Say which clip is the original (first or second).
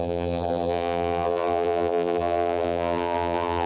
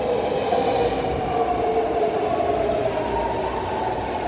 second